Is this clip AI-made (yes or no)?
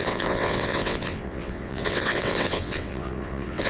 yes